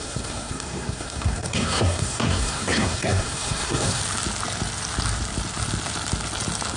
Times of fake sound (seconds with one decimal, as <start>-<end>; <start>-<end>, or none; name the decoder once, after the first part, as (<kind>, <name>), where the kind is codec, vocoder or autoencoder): 0.0-4.0 (codec, SNAC)